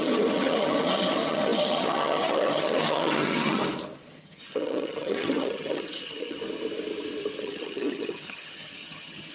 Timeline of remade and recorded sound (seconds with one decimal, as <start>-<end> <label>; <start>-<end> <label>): 0.0-3.6 remade; 3.6-4.2 recorded; 4.2-6.4 remade; 6.4-7.4 recorded; 7.4-9.3 remade